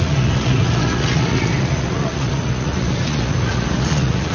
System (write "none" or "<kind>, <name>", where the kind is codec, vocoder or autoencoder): vocoder, Vocos